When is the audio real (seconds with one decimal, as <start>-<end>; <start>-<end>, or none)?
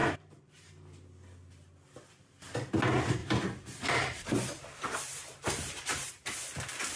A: 0.7-3.2; 6.1-7.0